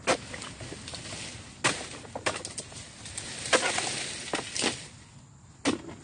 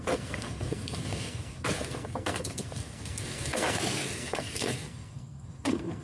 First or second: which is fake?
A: second